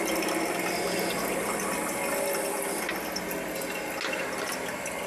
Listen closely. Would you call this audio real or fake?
real